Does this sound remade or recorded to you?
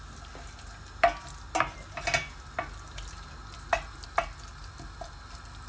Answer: recorded